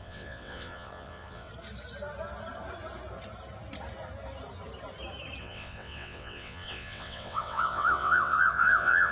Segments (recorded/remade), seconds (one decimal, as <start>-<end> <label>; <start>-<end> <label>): 0.0-1.5 remade; 1.5-5.4 recorded; 5.4-9.1 remade